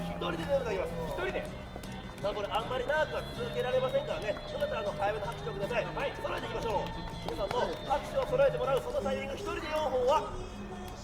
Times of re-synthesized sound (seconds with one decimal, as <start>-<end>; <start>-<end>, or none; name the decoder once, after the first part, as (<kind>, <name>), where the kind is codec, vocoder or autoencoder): 7.8-8.5 (autoencoder, DAC-VAE)